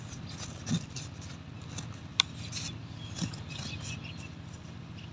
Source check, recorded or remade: recorded